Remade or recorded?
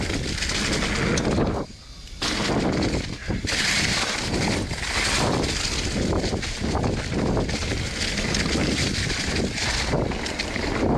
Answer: recorded